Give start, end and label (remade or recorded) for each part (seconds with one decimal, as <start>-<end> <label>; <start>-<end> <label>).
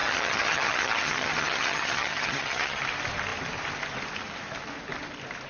0.0-2.8 remade; 2.8-5.5 recorded